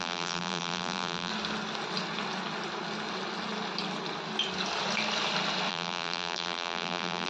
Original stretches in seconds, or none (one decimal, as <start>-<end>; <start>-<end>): 1.3-5.7